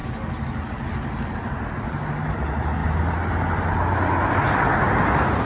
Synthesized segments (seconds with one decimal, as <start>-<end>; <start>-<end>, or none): none